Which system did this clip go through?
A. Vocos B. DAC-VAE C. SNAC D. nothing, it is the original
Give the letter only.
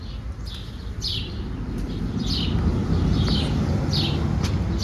D